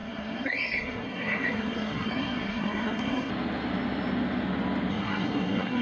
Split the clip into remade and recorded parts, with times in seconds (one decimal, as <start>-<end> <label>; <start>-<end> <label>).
0.0-3.3 remade; 3.3-4.9 recorded; 4.9-5.8 remade